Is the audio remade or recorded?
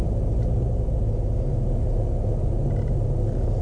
recorded